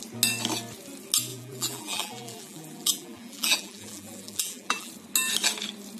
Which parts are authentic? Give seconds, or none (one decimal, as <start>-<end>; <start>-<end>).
0.0-1.3; 4.9-6.0